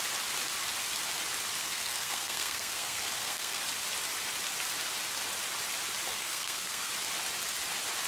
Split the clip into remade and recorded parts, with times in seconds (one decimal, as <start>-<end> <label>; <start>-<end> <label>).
0.0-1.6 recorded; 1.6-3.6 remade; 3.6-6.1 recorded; 6.1-6.9 remade; 6.9-8.1 recorded